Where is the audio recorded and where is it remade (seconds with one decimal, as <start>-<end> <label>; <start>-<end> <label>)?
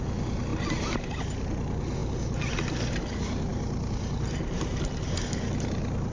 0.0-6.1 recorded